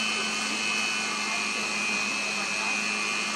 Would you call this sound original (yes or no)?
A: yes